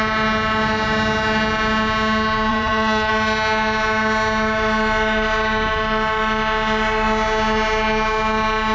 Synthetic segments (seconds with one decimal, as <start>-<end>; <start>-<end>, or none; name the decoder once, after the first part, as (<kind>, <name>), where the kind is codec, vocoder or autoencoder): 2.5-3.1 (vocoder, Vocos)